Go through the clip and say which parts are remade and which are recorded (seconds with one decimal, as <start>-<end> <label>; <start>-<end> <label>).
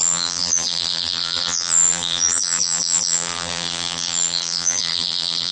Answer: 0.0-5.5 remade